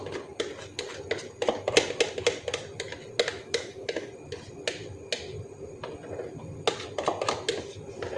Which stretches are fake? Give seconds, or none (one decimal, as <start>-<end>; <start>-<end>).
3.3-4.1